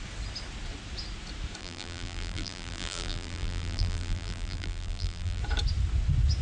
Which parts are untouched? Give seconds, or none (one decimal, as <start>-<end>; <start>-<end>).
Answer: 0.0-1.6; 5.4-6.4